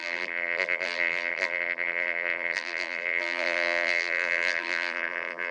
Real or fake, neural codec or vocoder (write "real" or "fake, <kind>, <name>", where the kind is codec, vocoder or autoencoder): fake, vocoder, BigVGAN v2